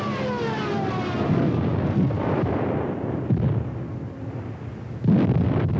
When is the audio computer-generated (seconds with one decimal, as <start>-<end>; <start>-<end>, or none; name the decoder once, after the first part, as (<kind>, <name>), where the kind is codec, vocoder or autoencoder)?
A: none